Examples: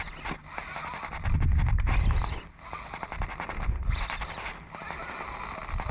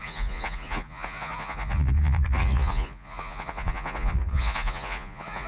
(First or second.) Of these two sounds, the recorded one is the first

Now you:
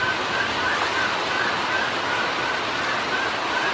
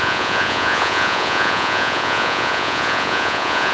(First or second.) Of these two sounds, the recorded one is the first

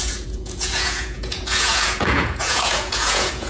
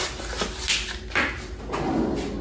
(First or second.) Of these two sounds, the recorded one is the second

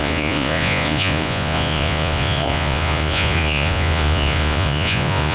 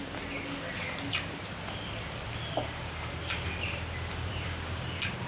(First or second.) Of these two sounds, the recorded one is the second